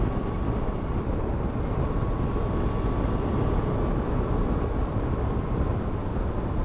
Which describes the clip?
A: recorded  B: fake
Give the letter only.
A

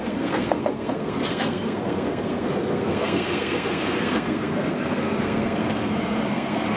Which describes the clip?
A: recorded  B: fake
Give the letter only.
B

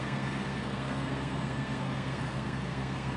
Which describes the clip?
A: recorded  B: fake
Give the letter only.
B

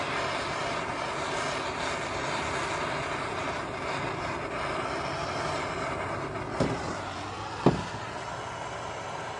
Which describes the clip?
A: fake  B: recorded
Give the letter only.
B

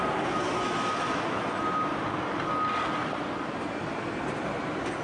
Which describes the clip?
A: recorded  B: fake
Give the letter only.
A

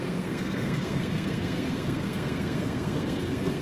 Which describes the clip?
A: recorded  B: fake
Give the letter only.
B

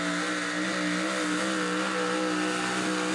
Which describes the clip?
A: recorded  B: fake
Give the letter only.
A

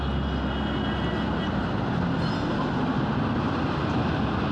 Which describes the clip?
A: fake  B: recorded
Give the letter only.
B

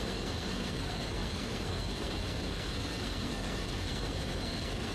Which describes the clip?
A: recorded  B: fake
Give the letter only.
B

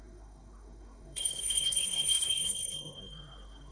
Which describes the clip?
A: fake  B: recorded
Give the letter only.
A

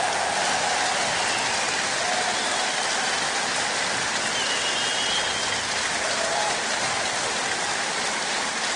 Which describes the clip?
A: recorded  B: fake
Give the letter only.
A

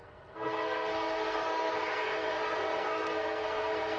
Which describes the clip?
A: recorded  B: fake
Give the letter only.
B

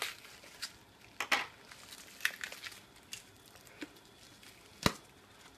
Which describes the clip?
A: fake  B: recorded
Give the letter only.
B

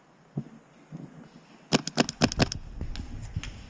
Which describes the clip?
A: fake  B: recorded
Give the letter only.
B